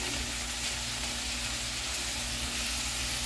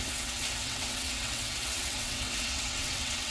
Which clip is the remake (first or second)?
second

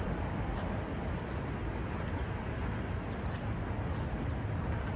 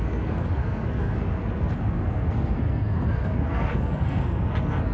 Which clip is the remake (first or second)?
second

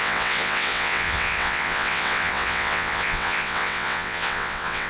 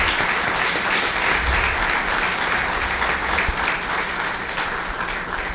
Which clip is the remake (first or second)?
first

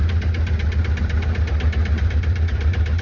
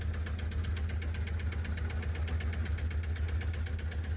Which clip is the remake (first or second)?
first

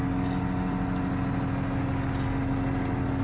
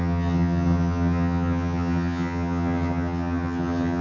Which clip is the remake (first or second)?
second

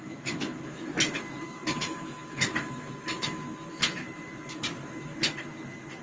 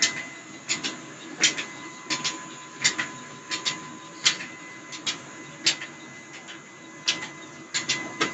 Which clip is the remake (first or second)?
first